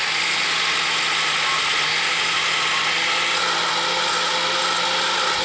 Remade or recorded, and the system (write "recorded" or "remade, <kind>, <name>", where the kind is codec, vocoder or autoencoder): recorded